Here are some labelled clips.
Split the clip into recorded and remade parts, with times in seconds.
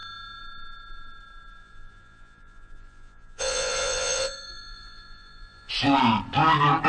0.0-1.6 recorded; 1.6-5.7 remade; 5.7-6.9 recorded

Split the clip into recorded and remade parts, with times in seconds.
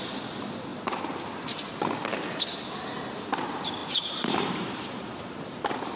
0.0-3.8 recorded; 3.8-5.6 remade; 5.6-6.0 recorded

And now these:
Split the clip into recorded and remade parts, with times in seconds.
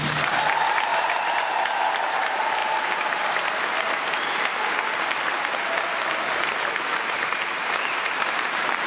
0.0-0.9 recorded; 0.9-1.5 remade; 1.5-2.6 recorded; 2.6-3.2 remade; 3.2-6.9 recorded; 6.9-8.9 remade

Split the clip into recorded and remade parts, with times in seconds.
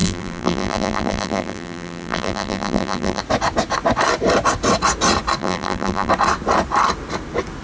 0.0-3.2 remade; 3.2-5.4 recorded; 5.4-6.1 remade; 6.1-7.6 recorded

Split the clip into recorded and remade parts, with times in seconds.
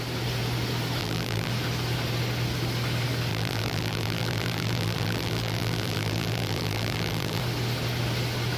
0.0-1.0 recorded; 1.0-1.5 remade; 1.5-3.3 recorded; 3.3-7.4 remade; 7.4-8.6 recorded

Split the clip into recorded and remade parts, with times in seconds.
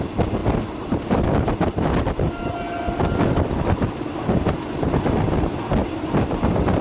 0.0-0.4 recorded; 0.4-4.5 remade; 4.5-5.8 recorded; 5.8-6.8 remade